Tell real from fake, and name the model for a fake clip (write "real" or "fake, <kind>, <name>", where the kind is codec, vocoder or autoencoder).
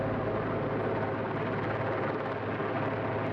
real